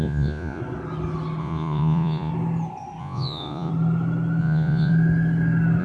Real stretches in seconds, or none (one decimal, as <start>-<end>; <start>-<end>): 0.6-1.4; 2.3-3.0; 3.7-4.4; 4.9-5.8